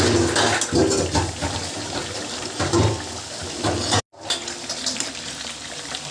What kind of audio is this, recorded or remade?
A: recorded